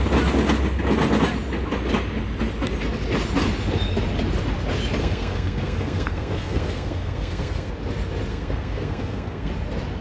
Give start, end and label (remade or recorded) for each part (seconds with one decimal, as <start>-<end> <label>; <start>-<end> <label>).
0.0-5.0 recorded; 5.0-7.7 remade; 7.7-8.3 recorded; 8.3-9.5 remade; 9.5-10.0 recorded